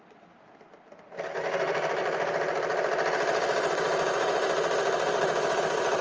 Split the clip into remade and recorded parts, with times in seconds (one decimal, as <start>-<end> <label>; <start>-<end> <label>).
0.0-6.0 recorded